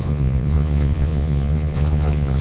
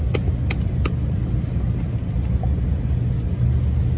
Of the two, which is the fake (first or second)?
first